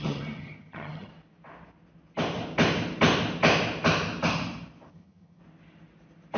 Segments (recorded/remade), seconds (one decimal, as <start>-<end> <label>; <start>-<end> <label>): 0.0-1.1 remade; 1.1-4.9 recorded; 4.9-5.4 remade; 5.4-6.4 recorded